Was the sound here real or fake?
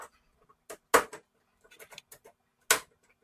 real